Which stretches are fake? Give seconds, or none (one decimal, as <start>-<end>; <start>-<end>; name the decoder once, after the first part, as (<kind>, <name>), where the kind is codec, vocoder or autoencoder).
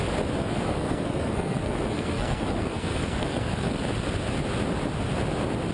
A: 0.4-3.8 (codec, SNAC)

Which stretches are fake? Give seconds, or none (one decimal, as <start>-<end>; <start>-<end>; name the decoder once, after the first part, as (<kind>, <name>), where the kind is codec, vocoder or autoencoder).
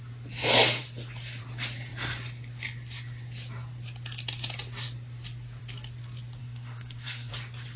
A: 6.4-7.3 (codec, SNAC)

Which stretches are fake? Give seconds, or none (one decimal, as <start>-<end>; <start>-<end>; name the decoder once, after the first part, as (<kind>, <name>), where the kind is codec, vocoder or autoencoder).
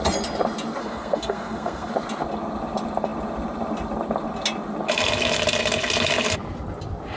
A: 0.8-1.9 (codec, SNAC)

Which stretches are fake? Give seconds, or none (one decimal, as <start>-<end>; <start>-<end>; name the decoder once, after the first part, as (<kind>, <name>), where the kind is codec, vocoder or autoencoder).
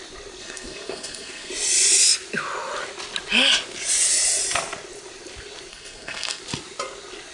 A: 0.4-1.5 (codec, SNAC); 5.7-6.4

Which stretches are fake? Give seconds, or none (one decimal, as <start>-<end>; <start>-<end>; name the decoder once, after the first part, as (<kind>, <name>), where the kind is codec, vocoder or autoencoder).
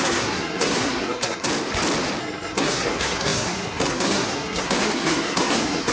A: 0.0-1.5 (codec, SNAC); 2.2-5.9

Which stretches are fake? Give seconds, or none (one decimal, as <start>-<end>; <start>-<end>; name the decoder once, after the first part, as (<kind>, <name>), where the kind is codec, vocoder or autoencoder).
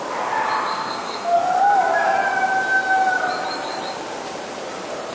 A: 0.7-1.4 (codec, SNAC)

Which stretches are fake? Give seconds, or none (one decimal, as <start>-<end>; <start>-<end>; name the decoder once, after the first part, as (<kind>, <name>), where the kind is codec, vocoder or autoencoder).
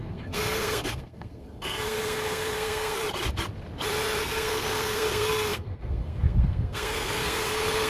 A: 0.0-3.0 (codec, SNAC); 4.2-7.9